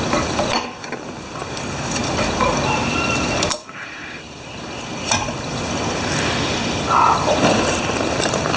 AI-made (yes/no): yes